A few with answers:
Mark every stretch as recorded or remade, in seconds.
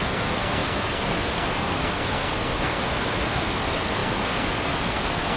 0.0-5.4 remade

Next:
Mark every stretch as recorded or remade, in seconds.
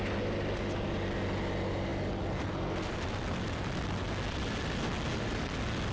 0.0-5.9 recorded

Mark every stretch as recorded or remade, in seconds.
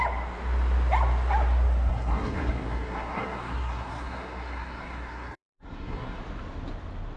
0.0-1.9 recorded; 1.9-6.2 remade; 6.2-7.2 recorded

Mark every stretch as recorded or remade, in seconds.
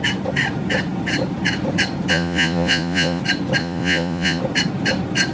0.0-2.1 recorded; 2.1-3.2 remade; 3.2-3.6 recorded; 3.6-4.4 remade; 4.4-5.3 recorded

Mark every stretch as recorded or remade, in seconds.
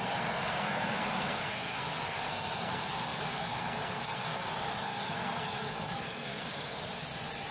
0.0-6.8 remade; 6.8-7.5 recorded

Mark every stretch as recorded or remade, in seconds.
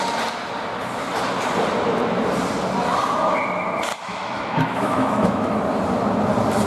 0.0-3.9 recorded; 3.9-5.6 remade; 5.6-6.7 recorded